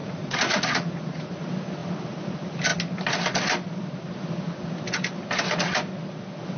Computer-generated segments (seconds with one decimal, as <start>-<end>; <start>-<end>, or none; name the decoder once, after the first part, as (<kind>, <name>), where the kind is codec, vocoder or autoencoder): 0.0-1.3 (vocoder, Vocos)